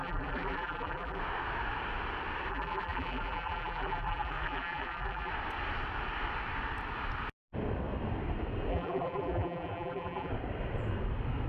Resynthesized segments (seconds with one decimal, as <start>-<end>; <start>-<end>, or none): 0.0-1.2; 2.5-5.3; 8.7-10.3